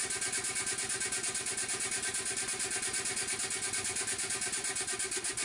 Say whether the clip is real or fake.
real